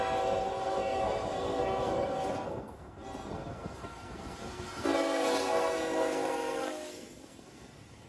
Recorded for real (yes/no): no